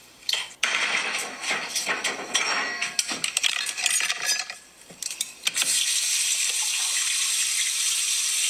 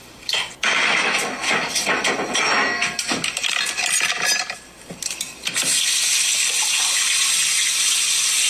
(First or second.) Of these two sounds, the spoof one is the first